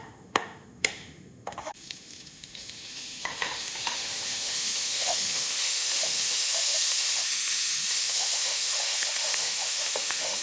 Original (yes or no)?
no